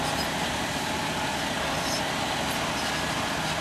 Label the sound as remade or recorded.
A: recorded